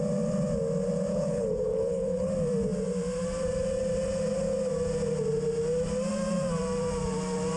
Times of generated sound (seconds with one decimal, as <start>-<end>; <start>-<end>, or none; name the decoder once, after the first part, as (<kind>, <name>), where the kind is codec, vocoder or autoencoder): 1.1-2.3 (codec, HILCodec)

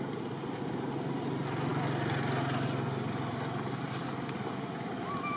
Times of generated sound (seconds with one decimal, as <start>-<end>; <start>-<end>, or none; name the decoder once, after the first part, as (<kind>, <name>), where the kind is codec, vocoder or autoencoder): none

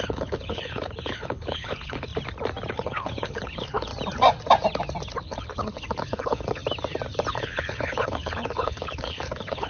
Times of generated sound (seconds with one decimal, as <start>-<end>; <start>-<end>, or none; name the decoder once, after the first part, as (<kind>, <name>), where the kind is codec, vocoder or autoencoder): 0.0-2.1 (codec, HILCodec); 2.7-3.9; 5.2-6.6; 7.3-9.7

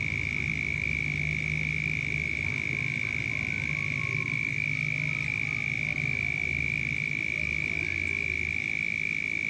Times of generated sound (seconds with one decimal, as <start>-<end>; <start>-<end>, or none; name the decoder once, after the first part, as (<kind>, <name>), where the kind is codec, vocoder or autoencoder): none